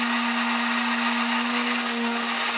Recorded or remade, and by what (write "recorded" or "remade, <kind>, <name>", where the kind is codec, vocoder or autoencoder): recorded